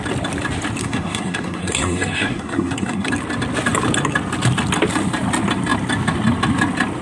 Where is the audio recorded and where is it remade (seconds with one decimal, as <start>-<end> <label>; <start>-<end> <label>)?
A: 0.0-0.8 recorded; 0.8-3.1 remade; 3.1-7.0 recorded

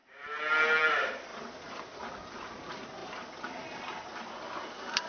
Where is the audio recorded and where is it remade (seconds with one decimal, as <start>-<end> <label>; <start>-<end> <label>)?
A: 0.0-5.1 remade

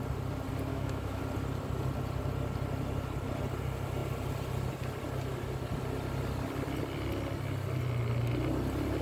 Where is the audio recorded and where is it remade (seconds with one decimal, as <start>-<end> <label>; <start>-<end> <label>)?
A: 0.0-0.7 recorded; 0.7-1.2 remade; 1.2-9.0 recorded